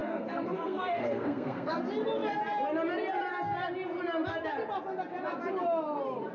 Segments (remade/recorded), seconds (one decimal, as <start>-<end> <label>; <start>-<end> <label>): 0.0-1.7 remade; 1.7-6.3 recorded